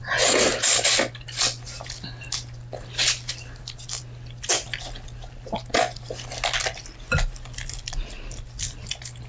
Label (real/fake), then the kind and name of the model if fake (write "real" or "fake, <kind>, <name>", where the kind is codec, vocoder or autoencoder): real